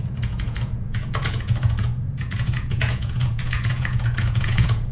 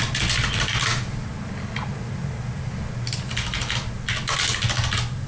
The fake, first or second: first